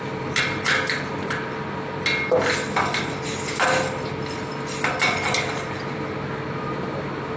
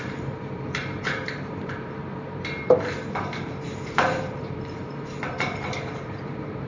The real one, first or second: first